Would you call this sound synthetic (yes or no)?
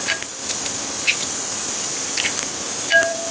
no